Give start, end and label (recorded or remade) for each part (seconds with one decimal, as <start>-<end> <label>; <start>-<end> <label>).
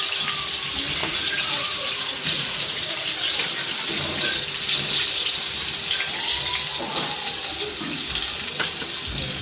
0.0-1.0 recorded; 1.0-2.9 remade; 2.9-9.4 recorded